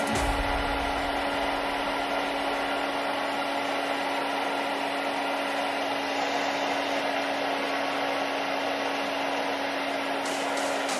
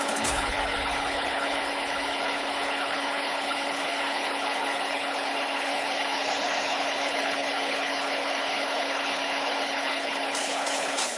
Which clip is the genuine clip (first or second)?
first